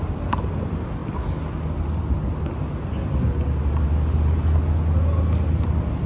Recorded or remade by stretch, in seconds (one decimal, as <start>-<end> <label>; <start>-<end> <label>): 0.0-6.1 recorded